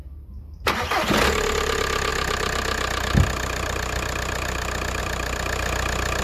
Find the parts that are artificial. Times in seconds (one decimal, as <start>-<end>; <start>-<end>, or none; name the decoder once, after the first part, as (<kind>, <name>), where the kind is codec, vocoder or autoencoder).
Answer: none